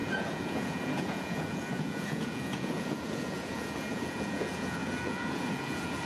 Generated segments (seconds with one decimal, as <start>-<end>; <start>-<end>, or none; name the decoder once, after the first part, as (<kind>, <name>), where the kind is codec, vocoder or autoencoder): 0.0-6.1 (vocoder, Vocos)